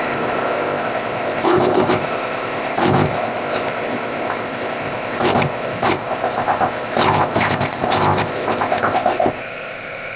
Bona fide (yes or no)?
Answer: no